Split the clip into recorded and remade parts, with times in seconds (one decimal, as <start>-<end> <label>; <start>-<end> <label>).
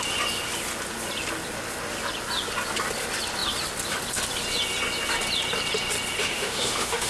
0.0-6.2 recorded; 6.2-7.1 remade